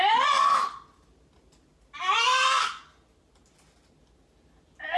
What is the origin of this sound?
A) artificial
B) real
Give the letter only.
B